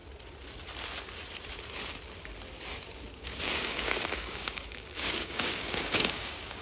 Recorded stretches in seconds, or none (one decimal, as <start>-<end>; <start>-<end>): 0.0-3.1